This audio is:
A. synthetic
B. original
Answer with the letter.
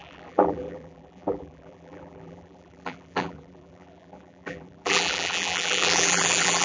A